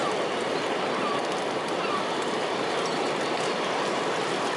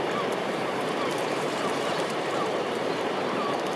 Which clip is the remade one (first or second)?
second